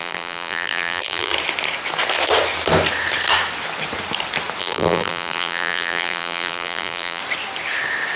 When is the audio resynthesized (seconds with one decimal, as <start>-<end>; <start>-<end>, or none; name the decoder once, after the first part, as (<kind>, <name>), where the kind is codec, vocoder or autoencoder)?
0.0-1.3 (vocoder, BigVGAN v2); 4.6-7.2